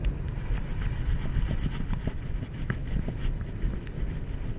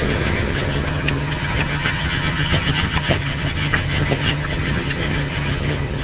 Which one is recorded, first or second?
first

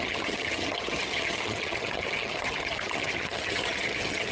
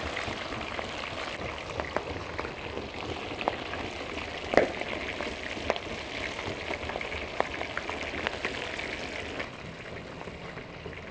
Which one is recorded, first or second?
second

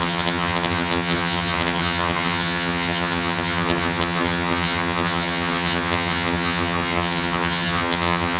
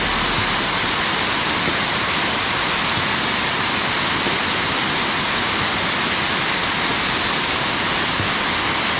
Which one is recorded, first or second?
second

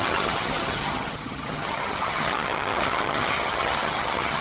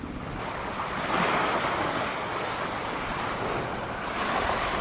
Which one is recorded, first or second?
second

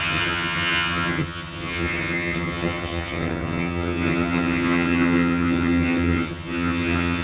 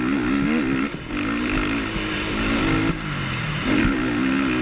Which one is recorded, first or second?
second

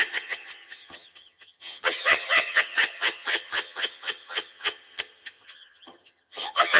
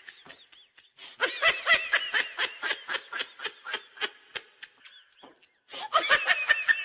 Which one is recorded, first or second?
second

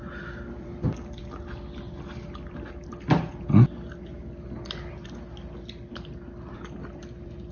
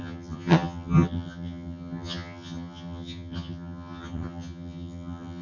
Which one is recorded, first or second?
first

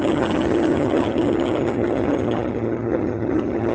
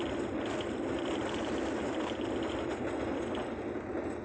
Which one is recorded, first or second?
second